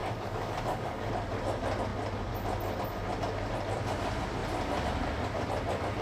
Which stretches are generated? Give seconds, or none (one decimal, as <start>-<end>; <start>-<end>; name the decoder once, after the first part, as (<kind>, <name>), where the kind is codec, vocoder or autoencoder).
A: 0.0-1.1 (codec, DAC)

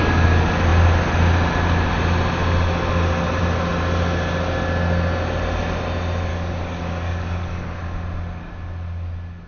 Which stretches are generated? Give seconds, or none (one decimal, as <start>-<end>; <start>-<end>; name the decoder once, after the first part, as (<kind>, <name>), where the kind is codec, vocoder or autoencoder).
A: 6.3-7.8 (codec, DAC)

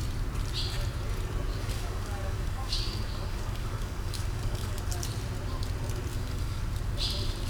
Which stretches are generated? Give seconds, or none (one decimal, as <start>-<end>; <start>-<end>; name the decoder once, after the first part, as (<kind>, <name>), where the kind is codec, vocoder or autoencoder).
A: 1.5-4.8 (codec, DAC); 6.1-6.6

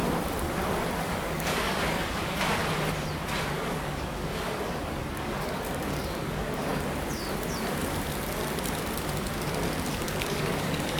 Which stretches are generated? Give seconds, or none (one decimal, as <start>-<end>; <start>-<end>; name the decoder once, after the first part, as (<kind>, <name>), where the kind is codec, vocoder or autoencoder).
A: 1.0-2.6 (codec, DAC); 3.4-6.7; 9.9-11.0

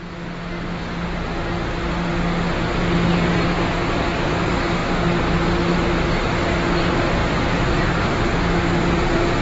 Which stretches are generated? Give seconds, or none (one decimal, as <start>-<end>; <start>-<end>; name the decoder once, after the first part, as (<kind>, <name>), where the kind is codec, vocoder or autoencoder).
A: none